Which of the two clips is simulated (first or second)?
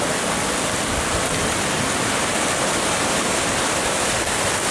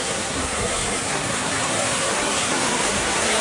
second